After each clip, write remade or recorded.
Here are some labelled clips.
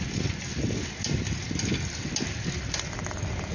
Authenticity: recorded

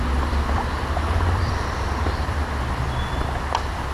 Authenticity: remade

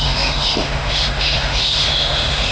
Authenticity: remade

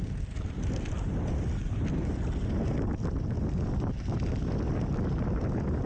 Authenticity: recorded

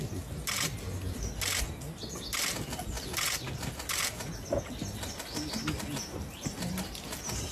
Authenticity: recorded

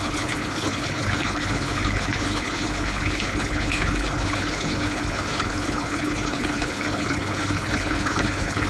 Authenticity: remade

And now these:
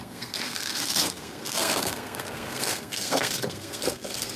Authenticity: remade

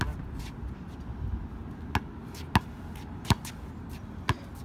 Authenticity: recorded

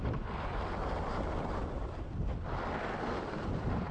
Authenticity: recorded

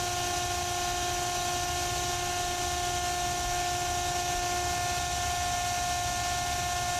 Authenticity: recorded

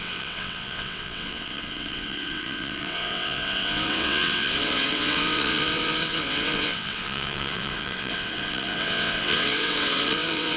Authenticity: remade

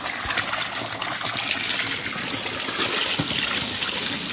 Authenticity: recorded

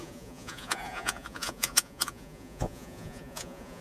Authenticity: remade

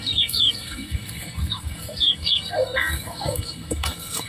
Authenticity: remade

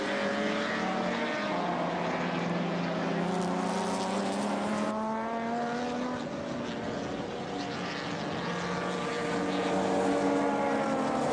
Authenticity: recorded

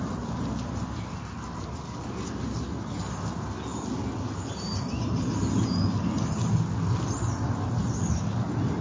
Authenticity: recorded